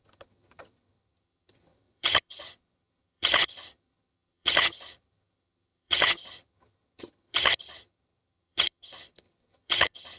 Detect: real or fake fake